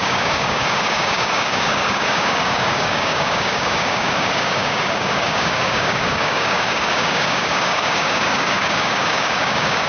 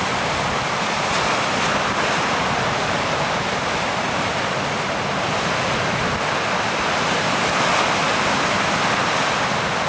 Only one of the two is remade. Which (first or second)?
first